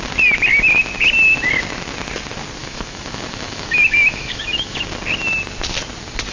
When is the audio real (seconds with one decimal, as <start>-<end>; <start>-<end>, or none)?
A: 0.0-2.6; 4.8-6.3